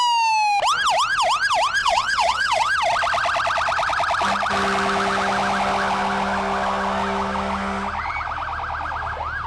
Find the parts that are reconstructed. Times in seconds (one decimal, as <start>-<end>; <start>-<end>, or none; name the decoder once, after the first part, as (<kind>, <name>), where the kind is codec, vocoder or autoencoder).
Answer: 1.8-2.7 (vocoder, WaveNeXt)